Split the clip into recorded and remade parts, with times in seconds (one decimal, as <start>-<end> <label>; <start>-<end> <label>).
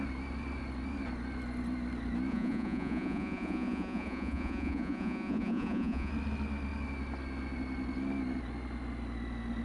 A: 0.0-2.3 recorded; 2.3-6.1 remade; 6.1-9.6 recorded